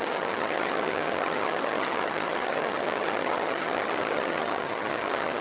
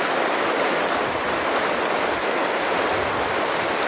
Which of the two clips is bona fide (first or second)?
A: second